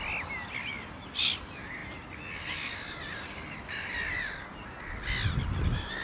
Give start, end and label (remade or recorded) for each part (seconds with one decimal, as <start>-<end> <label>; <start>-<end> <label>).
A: 0.0-6.0 recorded